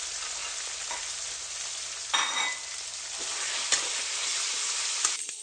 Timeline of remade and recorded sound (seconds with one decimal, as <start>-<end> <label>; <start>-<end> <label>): 0.0-5.4 recorded